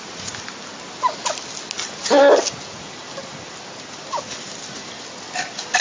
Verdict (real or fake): real